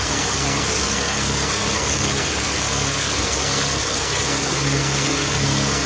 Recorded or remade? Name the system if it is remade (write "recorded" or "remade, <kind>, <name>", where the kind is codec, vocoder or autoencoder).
remade, codec, SNAC